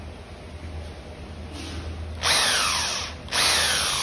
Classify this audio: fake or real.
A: real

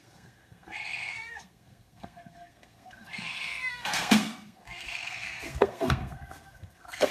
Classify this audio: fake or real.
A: fake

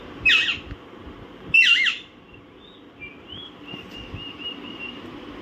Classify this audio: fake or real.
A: real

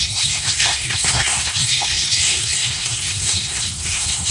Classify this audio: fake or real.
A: fake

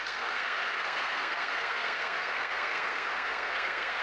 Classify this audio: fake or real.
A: fake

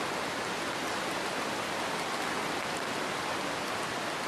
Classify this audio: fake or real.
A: real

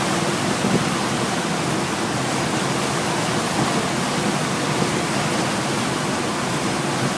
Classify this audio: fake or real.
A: real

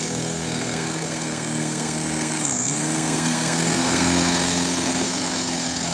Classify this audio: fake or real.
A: fake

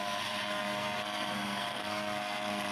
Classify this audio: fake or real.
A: fake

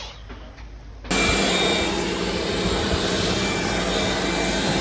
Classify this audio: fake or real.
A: real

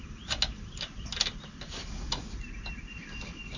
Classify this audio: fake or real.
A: real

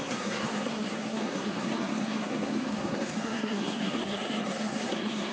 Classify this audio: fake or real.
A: fake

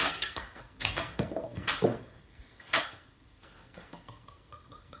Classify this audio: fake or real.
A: fake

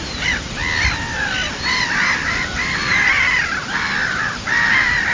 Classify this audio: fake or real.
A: real